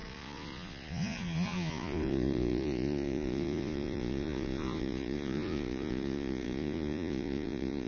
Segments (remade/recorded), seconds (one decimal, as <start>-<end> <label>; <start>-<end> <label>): 0.0-7.9 remade